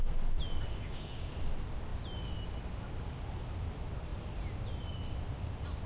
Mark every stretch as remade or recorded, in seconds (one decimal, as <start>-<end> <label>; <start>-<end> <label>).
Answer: 0.0-0.7 recorded; 0.7-1.3 remade; 1.3-5.9 recorded